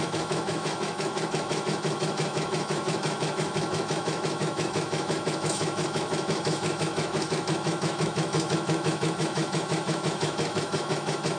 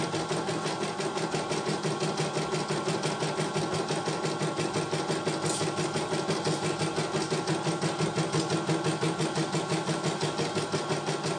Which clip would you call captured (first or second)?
second